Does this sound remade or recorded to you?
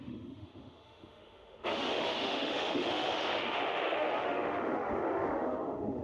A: remade